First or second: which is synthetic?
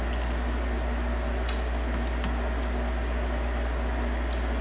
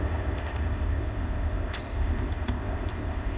second